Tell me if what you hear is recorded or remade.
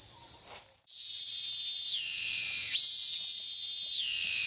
remade